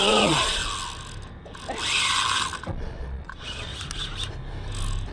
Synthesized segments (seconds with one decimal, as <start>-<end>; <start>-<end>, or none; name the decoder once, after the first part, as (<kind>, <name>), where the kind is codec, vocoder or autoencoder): 0.0-0.6 (vocoder, Vocos); 2.6-3.7